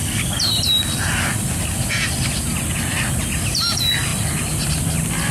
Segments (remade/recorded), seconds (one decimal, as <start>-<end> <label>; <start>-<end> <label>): 0.0-5.3 recorded